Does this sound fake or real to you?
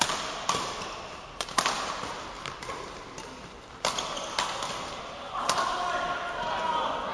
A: real